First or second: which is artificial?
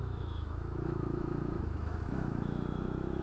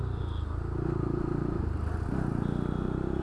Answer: first